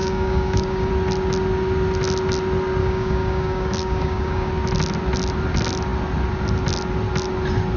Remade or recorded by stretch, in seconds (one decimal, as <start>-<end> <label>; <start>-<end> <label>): 0.0-0.9 remade; 0.9-2.8 recorded; 2.8-4.5 remade; 4.5-7.8 recorded